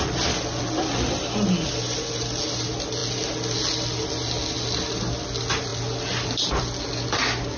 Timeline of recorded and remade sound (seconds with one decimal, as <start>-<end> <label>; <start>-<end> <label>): 0.0-7.6 recorded